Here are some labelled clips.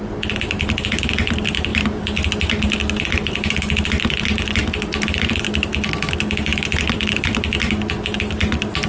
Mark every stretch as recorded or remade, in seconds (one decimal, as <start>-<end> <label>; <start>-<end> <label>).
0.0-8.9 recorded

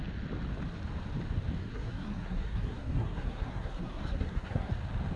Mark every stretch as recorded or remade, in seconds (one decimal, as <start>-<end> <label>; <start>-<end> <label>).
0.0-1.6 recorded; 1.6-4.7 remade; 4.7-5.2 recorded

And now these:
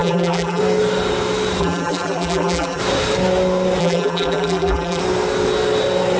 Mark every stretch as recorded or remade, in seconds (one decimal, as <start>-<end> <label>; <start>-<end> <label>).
0.0-0.6 remade; 0.6-1.6 recorded; 1.6-2.8 remade; 2.8-3.8 recorded; 3.8-5.0 remade; 5.0-6.2 recorded

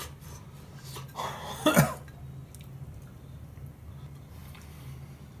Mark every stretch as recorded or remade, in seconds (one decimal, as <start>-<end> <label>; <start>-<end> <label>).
0.0-5.4 recorded

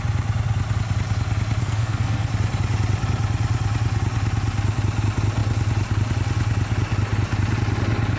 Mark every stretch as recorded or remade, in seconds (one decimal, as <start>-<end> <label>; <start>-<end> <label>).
0.0-1.6 recorded; 1.6-2.3 remade; 2.3-8.2 recorded

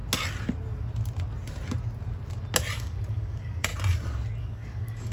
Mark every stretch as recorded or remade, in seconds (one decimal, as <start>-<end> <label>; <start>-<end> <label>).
0.0-2.8 recorded; 2.8-3.7 remade; 3.7-4.4 recorded; 4.4-5.1 remade

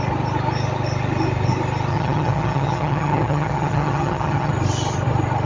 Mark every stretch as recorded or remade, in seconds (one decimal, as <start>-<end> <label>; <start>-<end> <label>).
0.0-1.9 recorded; 1.9-4.5 remade; 4.5-5.5 recorded

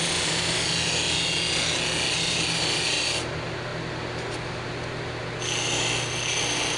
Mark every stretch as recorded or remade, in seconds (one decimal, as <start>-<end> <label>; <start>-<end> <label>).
0.0-6.8 recorded